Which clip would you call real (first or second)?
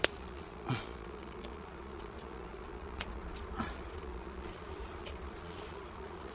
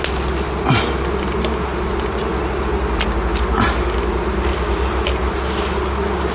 second